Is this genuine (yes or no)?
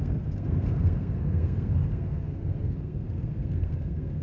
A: no